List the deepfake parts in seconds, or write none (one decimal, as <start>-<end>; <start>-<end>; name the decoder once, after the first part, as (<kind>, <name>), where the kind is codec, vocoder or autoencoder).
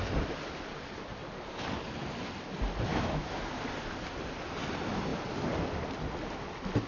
2.9-3.4 (autoencoder, DAC-VAE)